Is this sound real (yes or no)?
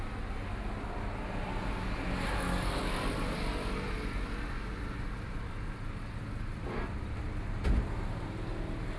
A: yes